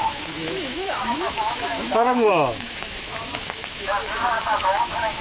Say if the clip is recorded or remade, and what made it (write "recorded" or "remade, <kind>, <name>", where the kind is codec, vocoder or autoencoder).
remade, autoencoder, DAC-VAE